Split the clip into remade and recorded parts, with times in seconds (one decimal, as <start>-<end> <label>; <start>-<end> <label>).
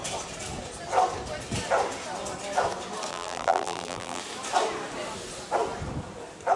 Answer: 0.0-3.1 recorded; 3.1-4.2 remade; 4.2-6.6 recorded